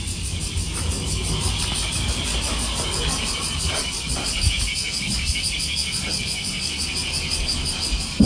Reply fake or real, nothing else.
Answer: fake